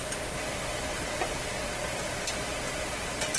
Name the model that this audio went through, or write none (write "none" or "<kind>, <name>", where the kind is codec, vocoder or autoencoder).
none